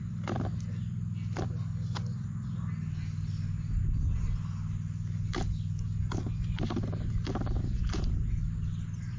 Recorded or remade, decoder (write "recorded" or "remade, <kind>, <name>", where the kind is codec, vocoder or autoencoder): recorded